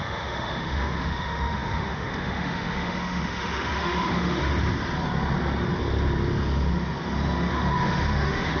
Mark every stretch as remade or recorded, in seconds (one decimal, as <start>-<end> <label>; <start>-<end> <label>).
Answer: 0.0-4.4 remade; 4.4-7.5 recorded; 7.5-8.6 remade